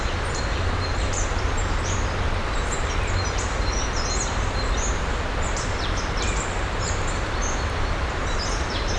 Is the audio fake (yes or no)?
yes